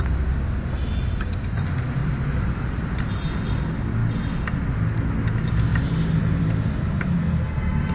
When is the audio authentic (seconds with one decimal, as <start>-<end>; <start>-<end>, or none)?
0.0-2.0; 3.0-5.7; 6.4-7.9

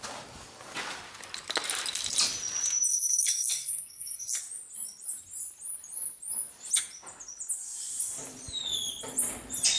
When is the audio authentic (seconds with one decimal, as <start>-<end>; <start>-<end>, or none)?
0.0-2.9; 4.4-9.8

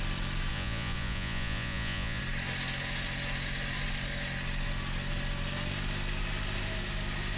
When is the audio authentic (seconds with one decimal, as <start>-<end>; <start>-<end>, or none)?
0.0-0.5; 2.2-7.4

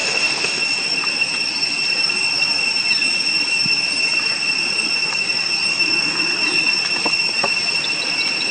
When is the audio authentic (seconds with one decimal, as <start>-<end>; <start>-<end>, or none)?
0.6-8.5

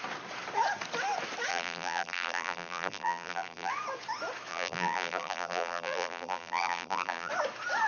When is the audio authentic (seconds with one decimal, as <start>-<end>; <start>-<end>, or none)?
0.0-1.5; 3.7-4.5; 7.3-7.9

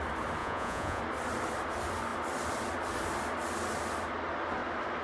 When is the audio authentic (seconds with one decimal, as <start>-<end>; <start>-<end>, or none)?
0.0-0.4; 1.0-5.0

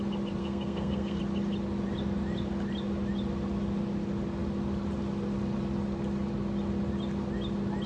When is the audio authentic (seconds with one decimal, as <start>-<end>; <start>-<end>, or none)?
0.0-0.4; 1.2-7.9

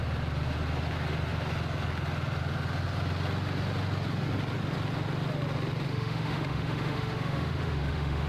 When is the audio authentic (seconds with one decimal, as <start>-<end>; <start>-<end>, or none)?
0.0-5.9